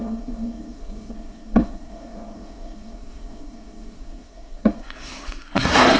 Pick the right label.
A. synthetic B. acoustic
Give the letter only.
A